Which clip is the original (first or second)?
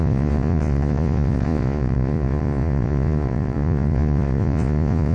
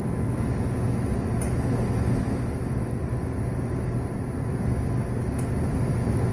second